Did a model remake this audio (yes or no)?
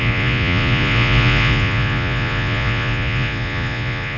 yes